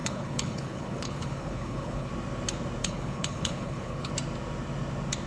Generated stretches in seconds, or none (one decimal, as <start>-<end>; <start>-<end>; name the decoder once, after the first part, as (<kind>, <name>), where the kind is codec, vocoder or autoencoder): 0.0-2.1 (codec, HILCodec); 2.8-4.1